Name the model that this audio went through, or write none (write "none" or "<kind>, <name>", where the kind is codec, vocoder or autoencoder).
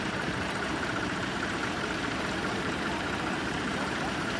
vocoder, BigVGAN v2